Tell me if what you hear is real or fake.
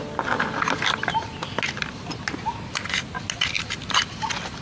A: real